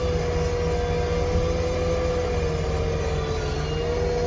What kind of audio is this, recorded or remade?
recorded